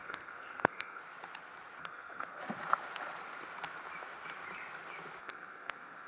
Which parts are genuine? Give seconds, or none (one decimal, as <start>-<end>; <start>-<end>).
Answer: 1.0-1.8; 2.4-5.2

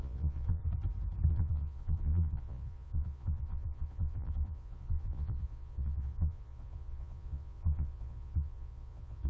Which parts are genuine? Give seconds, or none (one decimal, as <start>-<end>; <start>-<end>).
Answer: 0.6-1.3

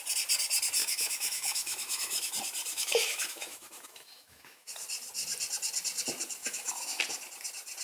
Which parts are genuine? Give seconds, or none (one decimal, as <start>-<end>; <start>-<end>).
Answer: 0.0-0.8; 2.3-2.7; 4.7-6.4; 7.0-7.8

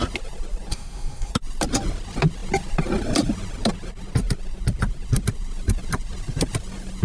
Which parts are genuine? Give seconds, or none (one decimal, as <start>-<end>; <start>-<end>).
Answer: 0.0-0.7; 1.3-7.0

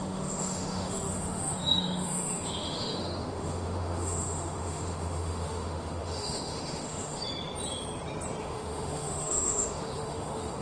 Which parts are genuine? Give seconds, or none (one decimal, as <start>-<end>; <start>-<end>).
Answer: 7.2-8.4

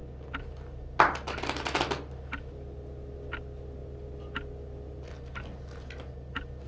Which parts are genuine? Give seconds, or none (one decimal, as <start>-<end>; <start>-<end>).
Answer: 0.0-6.7

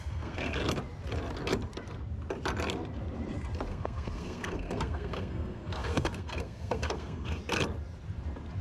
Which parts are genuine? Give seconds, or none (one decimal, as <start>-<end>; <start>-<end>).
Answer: 0.6-3.7; 7.4-8.6